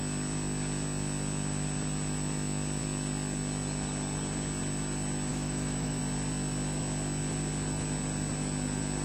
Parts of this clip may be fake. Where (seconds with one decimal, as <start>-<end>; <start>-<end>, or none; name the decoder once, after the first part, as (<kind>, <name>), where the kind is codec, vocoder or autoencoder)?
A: 5.3-6.0 (autoencoder, DAC-VAE)